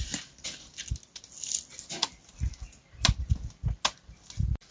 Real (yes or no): yes